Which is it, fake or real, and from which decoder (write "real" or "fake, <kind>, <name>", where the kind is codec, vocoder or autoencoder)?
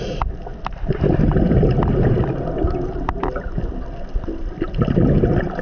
real